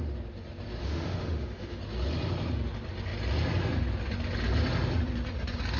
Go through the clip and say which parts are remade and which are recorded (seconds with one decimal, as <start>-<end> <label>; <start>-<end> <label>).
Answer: 0.0-0.8 recorded; 0.8-1.8 remade; 1.8-5.8 recorded